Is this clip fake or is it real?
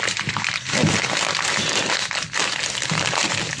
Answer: real